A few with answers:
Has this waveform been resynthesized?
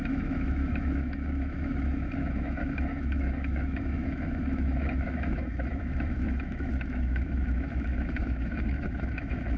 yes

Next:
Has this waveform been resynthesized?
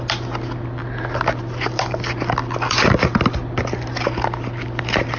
no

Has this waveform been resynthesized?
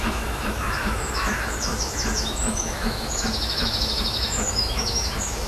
yes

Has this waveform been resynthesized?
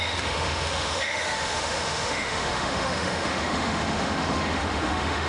yes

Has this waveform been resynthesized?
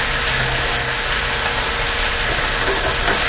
no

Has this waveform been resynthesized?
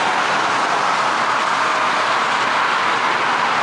no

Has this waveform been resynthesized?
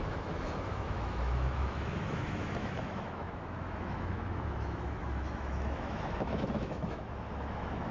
yes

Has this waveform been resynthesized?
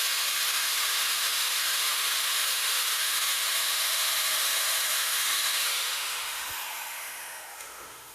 yes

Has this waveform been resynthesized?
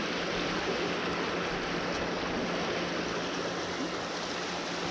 no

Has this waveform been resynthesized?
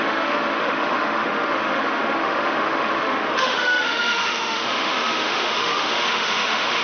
yes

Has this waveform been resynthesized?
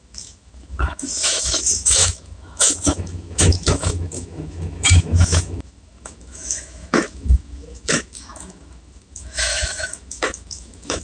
yes